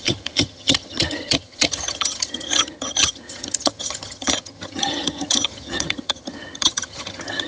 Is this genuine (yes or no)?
no